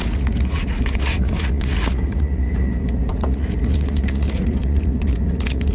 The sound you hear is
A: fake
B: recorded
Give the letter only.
A